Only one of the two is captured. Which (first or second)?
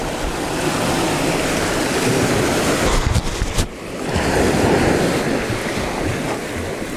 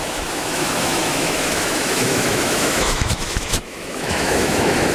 first